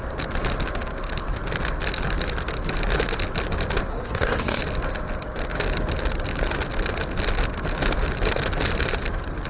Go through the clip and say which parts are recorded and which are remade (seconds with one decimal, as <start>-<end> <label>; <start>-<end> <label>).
0.0-3.9 recorded; 3.9-4.6 remade; 4.6-9.5 recorded